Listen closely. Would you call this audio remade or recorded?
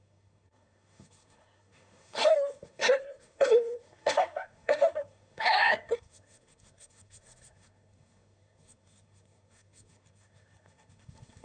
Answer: remade